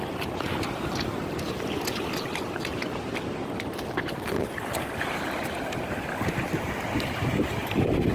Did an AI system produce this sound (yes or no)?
no